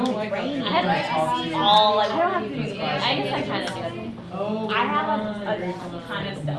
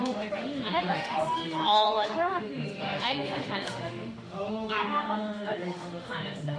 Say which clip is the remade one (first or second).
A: second